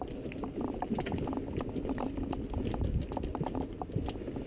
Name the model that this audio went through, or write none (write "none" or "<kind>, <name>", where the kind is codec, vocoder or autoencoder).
none